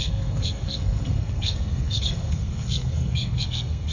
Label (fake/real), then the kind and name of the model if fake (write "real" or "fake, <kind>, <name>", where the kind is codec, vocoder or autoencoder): fake, codec, SNAC